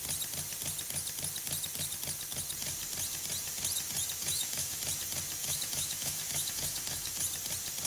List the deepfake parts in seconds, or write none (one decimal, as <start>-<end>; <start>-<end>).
4.2-4.8; 5.4-7.2